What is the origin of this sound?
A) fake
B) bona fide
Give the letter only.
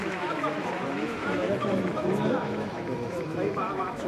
A